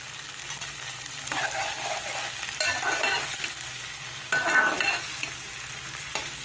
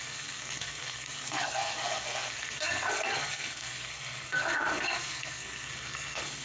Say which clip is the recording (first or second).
first